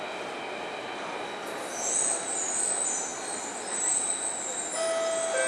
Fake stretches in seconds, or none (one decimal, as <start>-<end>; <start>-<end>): none